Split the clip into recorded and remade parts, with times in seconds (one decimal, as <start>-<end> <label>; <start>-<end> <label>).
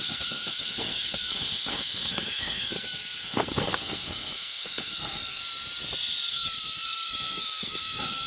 0.0-5.4 remade; 5.4-6.3 recorded; 6.3-8.3 remade